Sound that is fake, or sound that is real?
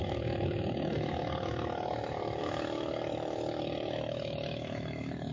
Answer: fake